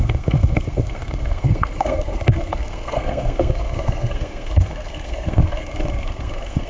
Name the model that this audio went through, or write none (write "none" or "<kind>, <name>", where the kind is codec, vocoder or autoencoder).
codec, SNAC